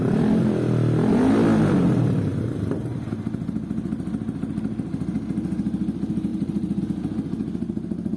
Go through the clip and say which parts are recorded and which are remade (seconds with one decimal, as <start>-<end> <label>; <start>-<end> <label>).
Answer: 0.0-6.3 recorded; 6.3-6.8 remade; 6.8-8.2 recorded